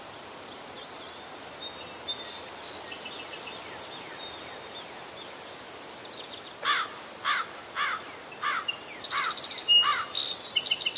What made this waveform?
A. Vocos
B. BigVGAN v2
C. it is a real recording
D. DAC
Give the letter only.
C